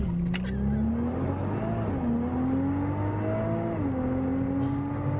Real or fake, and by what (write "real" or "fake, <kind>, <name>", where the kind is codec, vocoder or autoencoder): real